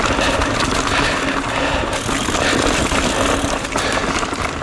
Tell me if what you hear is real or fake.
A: real